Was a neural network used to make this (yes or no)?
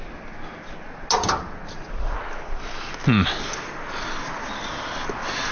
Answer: no